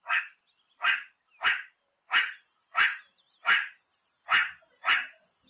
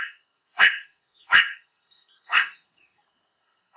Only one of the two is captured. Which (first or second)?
first